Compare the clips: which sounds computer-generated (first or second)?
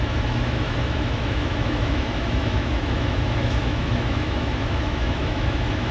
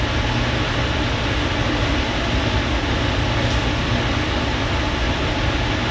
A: first